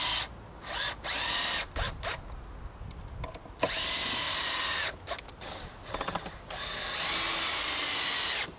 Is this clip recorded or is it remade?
recorded